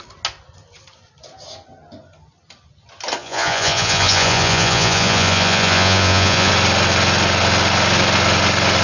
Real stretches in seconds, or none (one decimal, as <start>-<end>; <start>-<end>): 0.0-3.2; 6.5-8.8